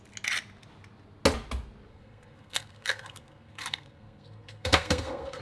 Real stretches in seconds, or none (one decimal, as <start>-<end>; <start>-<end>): 0.0-1.9